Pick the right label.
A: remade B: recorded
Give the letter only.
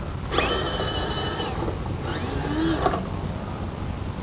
B